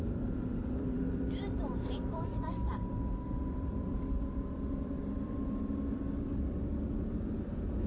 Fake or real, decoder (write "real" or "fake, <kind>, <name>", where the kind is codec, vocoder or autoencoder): fake, vocoder, BigVGAN v2